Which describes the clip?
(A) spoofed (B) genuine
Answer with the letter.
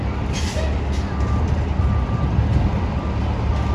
B